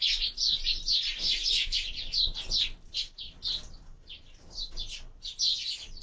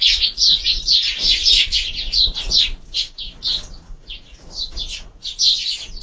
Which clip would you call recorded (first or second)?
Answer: first